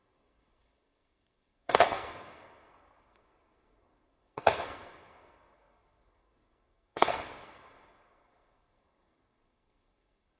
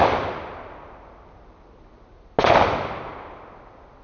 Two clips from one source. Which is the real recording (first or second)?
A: second